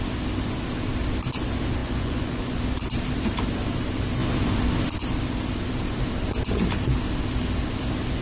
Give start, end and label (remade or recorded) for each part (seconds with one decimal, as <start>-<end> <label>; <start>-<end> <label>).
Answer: 0.0-1.8 recorded; 1.8-2.6 remade; 2.6-8.2 recorded